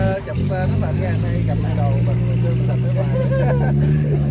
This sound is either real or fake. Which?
real